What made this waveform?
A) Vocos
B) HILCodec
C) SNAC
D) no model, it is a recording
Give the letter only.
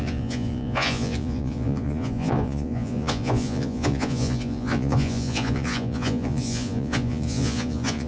A